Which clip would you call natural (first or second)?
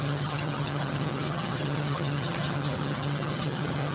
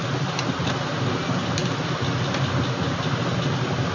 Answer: second